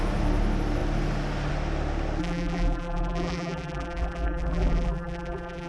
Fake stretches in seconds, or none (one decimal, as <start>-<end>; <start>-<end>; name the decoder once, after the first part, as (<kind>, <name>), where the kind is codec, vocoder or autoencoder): 2.2-5.7 (vocoder, BigVGAN v2)